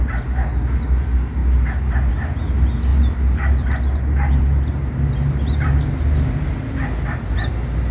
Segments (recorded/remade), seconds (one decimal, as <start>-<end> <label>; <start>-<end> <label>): 0.0-1.4 recorded; 1.4-2.1 remade; 2.1-2.9 recorded; 2.9-5.8 remade; 5.8-7.9 recorded